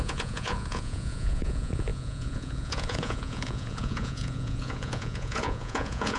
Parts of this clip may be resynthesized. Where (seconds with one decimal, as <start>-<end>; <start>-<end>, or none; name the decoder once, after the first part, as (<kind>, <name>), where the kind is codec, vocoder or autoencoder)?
0.0-6.2 (vocoder, Vocos)